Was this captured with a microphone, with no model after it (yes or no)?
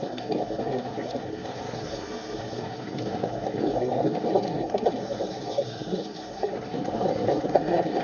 no